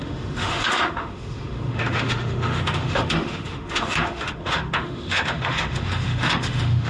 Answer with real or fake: fake